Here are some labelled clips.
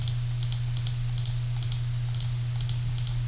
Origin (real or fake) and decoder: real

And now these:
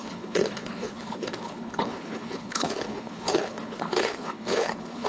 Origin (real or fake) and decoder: fake, codec, HILCodec